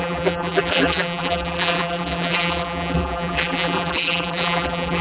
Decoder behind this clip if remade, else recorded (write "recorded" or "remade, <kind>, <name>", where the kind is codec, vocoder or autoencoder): remade, vocoder, BigVGAN v2